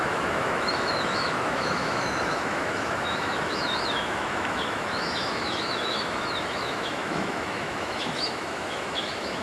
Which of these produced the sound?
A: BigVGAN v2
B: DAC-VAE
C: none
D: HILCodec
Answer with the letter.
B